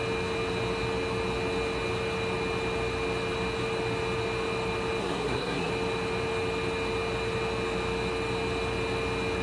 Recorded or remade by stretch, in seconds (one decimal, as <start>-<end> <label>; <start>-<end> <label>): 0.0-5.0 recorded; 5.0-5.7 remade; 5.7-9.4 recorded